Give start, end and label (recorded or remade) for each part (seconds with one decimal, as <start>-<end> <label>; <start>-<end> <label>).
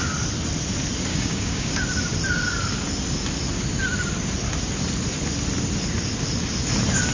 0.0-1.1 recorded; 1.1-1.8 remade; 1.8-7.1 recorded